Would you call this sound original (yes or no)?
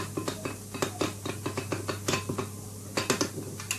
yes